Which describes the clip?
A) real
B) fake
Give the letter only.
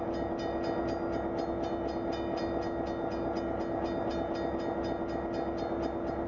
A